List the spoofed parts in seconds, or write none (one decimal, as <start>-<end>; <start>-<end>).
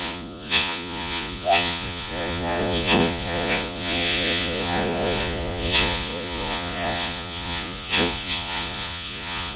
0.0-9.6